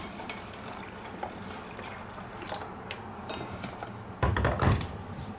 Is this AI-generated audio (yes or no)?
yes